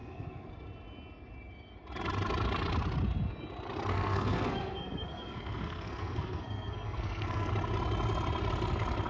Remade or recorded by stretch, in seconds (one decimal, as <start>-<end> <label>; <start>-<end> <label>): 0.0-0.5 remade; 0.5-3.9 recorded; 3.9-7.5 remade; 7.5-9.1 recorded